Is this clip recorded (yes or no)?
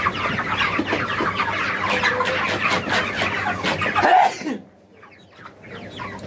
yes